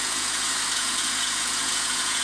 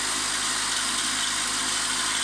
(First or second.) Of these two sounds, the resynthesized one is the first